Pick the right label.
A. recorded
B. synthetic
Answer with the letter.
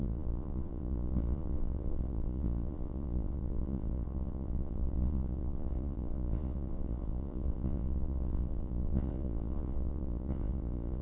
B